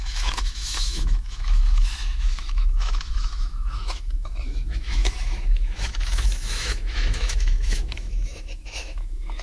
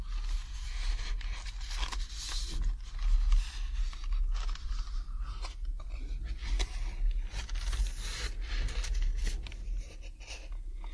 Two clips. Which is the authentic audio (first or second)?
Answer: second